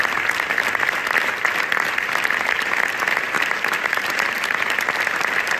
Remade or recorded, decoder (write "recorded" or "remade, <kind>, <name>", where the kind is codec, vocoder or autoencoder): recorded